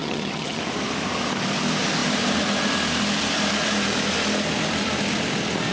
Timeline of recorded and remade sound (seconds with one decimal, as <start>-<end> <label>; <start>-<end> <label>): 0.0-0.6 remade; 0.6-5.7 recorded